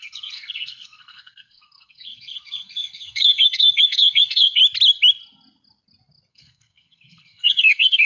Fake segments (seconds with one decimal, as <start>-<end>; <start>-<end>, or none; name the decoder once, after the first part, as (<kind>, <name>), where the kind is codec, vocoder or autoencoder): 0.0-4.6 (codec, SNAC); 6.3-8.1